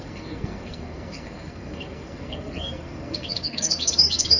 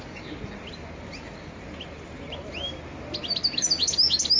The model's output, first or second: first